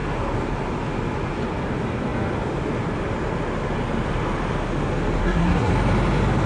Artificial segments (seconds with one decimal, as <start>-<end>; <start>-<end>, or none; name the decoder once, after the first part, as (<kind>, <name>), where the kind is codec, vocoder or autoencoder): 5.2-5.7 (codec, SNAC)